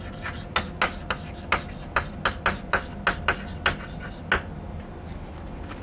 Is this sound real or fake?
real